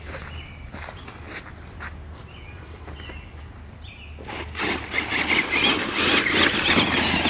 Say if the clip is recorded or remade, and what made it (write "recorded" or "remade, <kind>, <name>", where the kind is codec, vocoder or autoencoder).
recorded